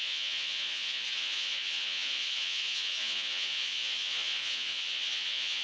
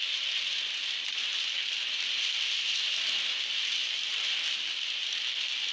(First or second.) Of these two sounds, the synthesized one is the first